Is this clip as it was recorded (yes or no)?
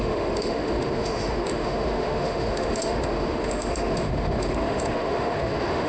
no